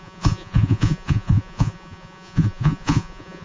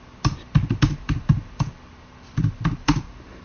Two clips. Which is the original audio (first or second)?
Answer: second